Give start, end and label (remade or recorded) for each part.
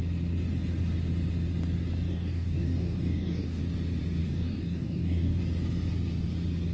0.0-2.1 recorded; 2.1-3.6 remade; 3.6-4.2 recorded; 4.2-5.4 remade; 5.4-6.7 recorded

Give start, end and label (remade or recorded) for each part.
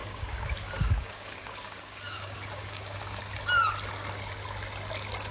0.0-3.2 remade; 3.2-5.3 recorded